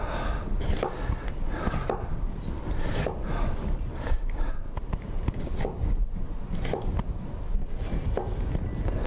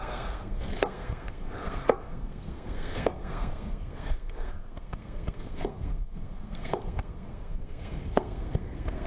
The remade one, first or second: second